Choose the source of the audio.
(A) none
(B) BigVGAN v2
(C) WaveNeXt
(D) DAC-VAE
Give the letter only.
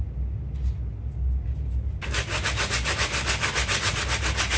A